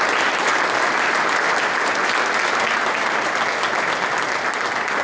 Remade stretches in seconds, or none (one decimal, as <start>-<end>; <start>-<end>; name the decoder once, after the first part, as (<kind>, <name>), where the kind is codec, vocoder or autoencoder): none